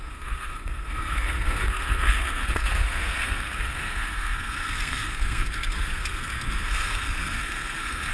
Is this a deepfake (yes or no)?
yes